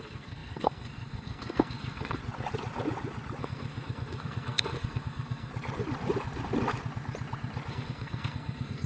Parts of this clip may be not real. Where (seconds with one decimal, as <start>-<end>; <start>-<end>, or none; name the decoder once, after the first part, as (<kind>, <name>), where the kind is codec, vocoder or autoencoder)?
0.0-2.2 (codec, SNAC); 3.4-5.5; 7.7-8.9